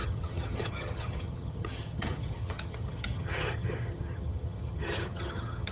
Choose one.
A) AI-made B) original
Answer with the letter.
A